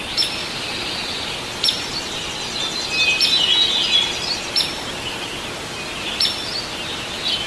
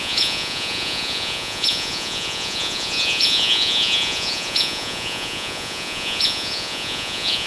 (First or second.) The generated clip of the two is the second